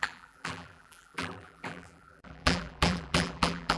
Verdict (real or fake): fake